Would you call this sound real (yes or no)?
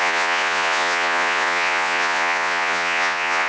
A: no